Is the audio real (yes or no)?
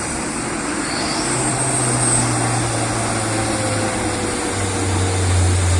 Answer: yes